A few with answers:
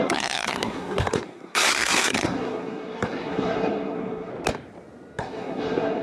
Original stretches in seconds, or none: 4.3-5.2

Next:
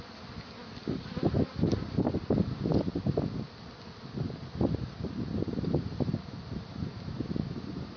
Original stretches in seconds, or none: 0.0-8.0

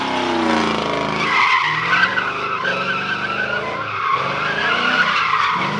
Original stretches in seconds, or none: 0.0-5.8

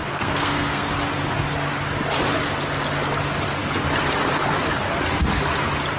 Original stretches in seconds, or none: 0.9-6.0

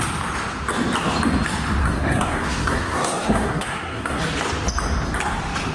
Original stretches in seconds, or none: 0.0-1.8; 4.2-5.7

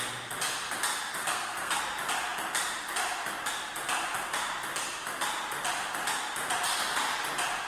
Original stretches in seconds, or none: 0.0-1.2; 1.8-7.7